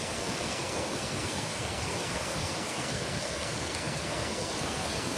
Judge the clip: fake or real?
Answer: fake